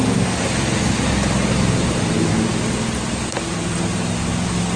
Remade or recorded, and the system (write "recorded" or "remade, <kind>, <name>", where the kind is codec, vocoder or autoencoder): recorded